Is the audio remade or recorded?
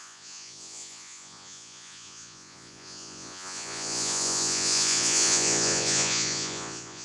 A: remade